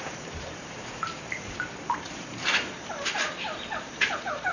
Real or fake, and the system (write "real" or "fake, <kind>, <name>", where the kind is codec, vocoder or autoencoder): fake, vocoder, BigVGAN v2